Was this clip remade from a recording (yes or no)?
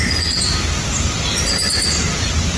no